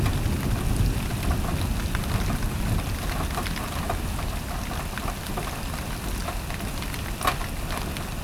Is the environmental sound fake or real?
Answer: real